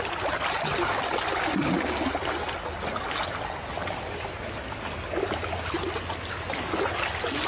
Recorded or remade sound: recorded